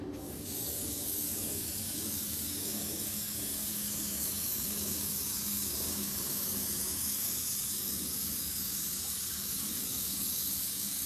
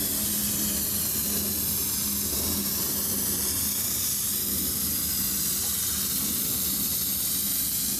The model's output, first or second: first